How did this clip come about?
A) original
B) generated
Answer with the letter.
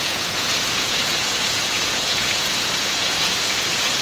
B